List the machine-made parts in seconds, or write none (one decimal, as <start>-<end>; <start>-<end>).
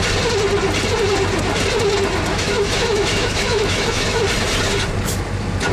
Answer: 2.3-4.2